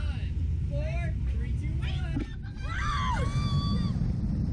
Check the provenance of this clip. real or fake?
real